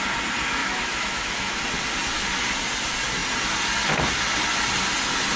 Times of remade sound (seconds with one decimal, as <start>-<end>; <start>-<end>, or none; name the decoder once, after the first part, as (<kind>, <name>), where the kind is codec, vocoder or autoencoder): 0.6-1.6 (autoencoder, DAC-VAE)